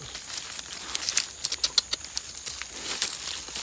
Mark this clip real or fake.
real